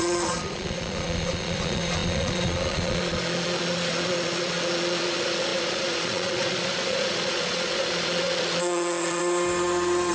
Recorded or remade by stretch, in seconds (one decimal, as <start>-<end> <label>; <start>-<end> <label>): 0.0-9.2 remade; 9.2-10.1 recorded